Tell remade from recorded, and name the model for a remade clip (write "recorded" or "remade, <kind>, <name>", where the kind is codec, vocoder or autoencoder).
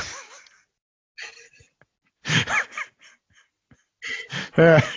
recorded